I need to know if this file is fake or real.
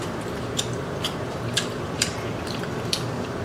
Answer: fake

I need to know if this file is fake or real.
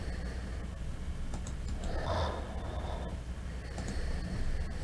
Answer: real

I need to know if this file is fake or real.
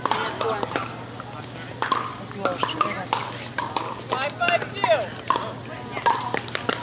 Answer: real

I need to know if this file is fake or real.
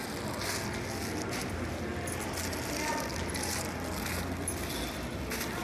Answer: real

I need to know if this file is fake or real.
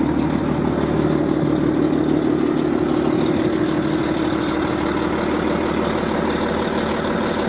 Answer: real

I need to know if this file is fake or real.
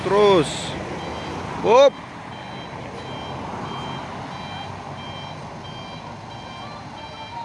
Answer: real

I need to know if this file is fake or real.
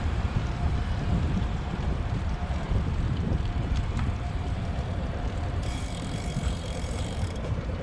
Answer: fake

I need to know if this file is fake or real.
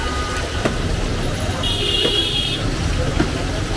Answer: fake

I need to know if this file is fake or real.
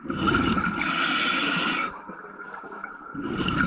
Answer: real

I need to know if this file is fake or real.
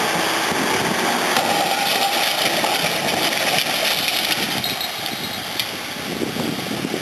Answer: real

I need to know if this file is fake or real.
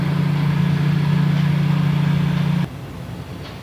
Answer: real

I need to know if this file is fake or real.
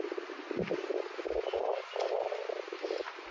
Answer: real